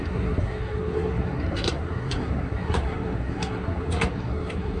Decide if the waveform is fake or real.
fake